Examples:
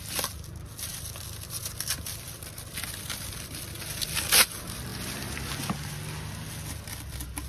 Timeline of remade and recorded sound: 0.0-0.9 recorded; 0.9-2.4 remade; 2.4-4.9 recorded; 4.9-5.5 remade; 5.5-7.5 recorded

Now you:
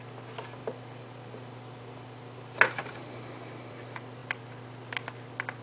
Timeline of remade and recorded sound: 0.0-0.6 recorded; 0.6-3.7 remade; 3.7-5.6 recorded

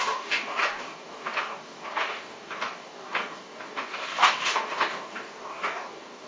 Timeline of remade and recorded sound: 0.0-6.3 remade

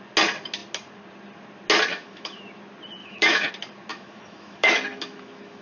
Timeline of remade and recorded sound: 0.0-1.9 recorded; 1.9-2.4 remade; 2.4-3.0 recorded; 3.0-3.5 remade; 3.5-3.9 recorded; 3.9-5.6 remade